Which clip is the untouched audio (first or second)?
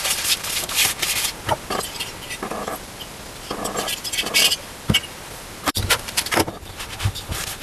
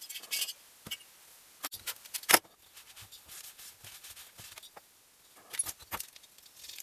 second